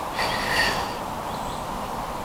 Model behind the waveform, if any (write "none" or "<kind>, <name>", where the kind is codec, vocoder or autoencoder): none